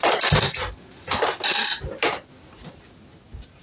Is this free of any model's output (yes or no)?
yes